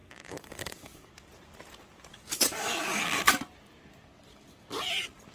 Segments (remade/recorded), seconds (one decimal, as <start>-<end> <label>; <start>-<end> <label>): 0.0-1.1 remade; 1.1-2.1 recorded; 2.1-3.4 remade; 3.4-4.3 recorded; 4.3-4.8 remade; 4.8-5.3 recorded